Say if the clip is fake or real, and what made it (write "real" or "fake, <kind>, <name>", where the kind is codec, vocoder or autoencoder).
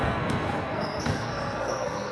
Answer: fake, codec, SNAC